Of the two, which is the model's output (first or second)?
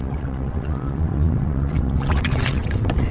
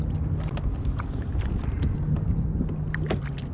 first